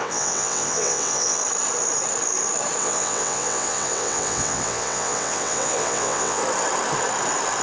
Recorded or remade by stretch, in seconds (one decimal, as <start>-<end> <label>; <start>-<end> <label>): 0.0-1.4 remade; 1.4-2.8 recorded; 2.8-6.4 remade; 6.4-7.6 recorded